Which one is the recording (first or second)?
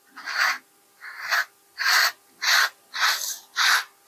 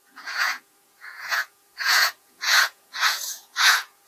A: first